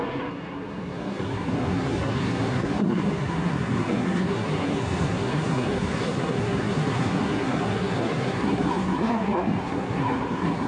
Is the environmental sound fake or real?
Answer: fake